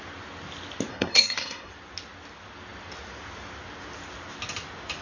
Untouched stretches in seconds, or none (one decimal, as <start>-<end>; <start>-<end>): 0.0-0.9; 1.7-5.0